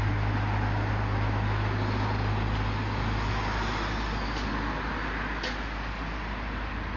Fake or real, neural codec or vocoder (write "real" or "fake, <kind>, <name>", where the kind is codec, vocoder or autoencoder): real